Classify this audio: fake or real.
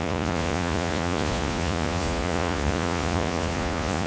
fake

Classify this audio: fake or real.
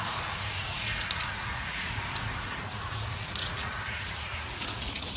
fake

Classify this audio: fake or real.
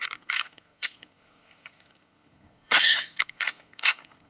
fake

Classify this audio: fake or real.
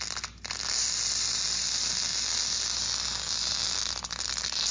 real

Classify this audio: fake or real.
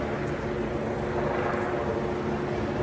real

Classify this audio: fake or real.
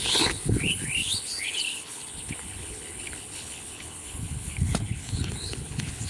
fake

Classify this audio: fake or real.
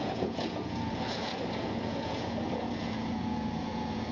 fake